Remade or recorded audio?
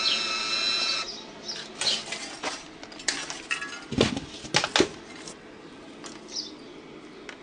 recorded